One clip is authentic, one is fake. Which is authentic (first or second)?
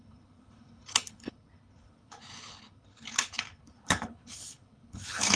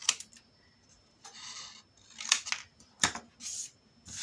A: second